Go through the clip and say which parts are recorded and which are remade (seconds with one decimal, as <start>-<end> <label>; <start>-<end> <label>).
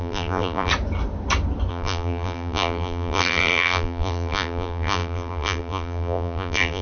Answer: 0.0-0.7 remade; 0.7-1.7 recorded; 1.7-6.8 remade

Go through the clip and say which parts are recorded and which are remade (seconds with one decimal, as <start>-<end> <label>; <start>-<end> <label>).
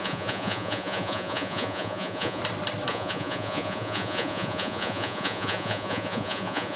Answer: 0.0-2.4 remade; 2.4-2.9 recorded; 2.9-6.8 remade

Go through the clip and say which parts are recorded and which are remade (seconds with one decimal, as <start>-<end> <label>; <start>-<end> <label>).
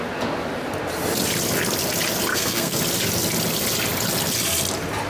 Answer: 0.0-2.3 recorded; 2.3-2.8 remade; 2.8-5.1 recorded